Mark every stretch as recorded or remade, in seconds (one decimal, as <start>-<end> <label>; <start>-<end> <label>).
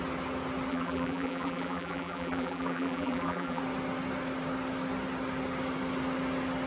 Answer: 0.0-0.7 recorded; 0.7-3.6 remade; 3.6-6.7 recorded